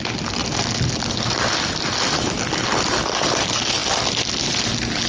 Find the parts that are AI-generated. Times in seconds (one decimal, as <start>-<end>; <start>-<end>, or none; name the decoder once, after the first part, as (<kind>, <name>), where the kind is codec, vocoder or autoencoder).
none